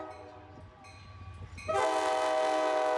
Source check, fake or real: real